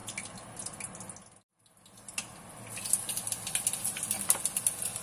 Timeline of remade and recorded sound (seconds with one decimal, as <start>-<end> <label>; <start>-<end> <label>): 0.0-5.0 recorded